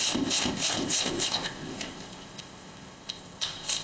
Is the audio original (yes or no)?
no